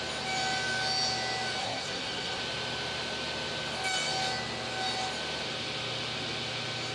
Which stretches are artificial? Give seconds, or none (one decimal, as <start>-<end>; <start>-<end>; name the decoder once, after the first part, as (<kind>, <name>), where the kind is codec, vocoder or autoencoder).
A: 1.6-2.4 (codec, SNAC)